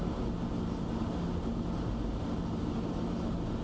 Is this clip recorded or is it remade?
recorded